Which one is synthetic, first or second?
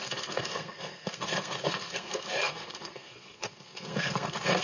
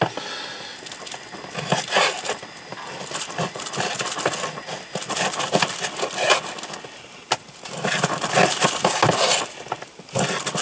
first